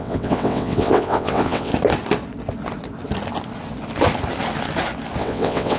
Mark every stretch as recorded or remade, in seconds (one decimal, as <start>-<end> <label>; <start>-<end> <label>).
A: 0.0-1.7 remade; 1.7-5.2 recorded; 5.2-5.8 remade